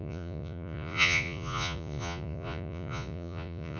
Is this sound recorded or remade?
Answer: remade